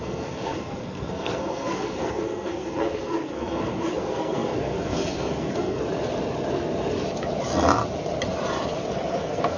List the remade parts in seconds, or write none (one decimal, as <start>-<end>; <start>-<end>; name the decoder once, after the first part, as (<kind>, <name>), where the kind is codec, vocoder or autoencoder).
0.0-5.8 (codec, SNAC); 9.1-9.6